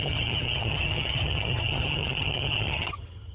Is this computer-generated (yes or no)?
yes